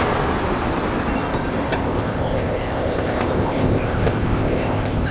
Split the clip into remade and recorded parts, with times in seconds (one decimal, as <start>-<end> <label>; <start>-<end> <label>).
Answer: 0.0-1.8 recorded; 1.8-5.1 remade